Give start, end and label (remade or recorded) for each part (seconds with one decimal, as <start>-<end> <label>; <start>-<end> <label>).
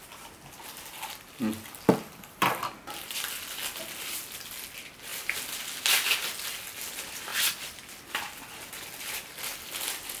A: 0.0-10.2 recorded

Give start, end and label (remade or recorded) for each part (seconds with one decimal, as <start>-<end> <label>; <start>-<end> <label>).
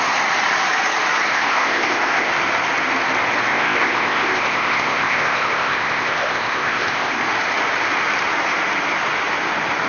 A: 0.0-1.3 recorded; 1.3-2.3 remade; 2.3-3.5 recorded; 3.5-7.2 remade; 7.2-9.9 recorded